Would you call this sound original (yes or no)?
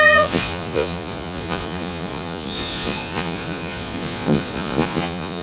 no